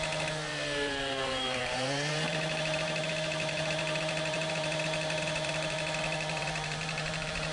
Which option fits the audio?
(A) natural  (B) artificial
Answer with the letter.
B